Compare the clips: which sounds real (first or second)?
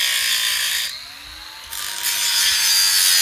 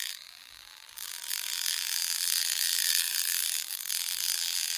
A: first